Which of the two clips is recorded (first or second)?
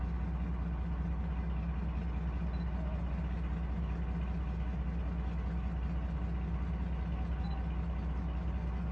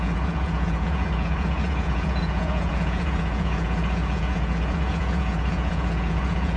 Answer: first